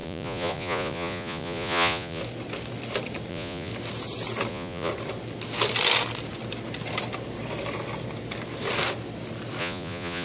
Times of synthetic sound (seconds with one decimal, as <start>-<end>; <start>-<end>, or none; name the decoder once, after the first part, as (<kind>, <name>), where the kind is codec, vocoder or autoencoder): 0.0-2.2 (vocoder, Vocos); 3.3-3.7; 4.5-4.9; 9.6-10.2